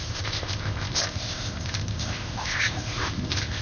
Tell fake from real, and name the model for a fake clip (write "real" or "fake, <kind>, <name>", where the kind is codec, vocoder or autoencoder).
fake, codec, ZipCodec